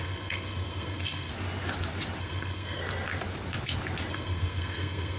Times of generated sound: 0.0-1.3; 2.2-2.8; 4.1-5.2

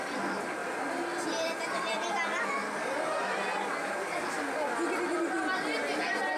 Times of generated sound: none